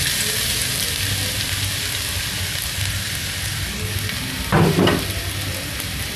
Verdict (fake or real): real